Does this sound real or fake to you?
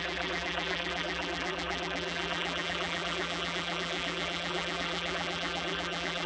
fake